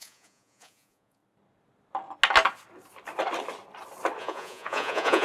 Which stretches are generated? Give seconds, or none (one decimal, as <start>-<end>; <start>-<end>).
0.0-1.2; 4.2-5.2